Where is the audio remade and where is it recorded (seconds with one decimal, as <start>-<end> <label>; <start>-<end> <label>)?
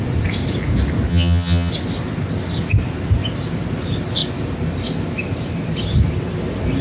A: 0.0-1.1 recorded; 1.1-1.7 remade; 1.7-6.8 recorded